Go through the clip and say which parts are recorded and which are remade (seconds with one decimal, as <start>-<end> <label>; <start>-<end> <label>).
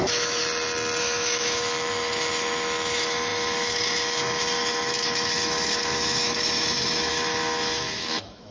0.0-0.4 remade; 0.4-1.0 recorded; 1.0-8.5 remade